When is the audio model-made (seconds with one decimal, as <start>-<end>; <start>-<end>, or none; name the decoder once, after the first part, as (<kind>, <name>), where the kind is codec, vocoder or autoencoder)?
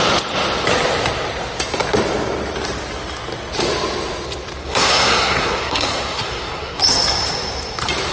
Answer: 4.6-6.8 (codec, SNAC)